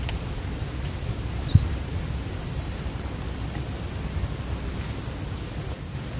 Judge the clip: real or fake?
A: real